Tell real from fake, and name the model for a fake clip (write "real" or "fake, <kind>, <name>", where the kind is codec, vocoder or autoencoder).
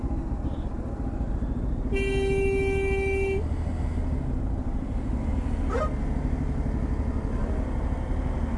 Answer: real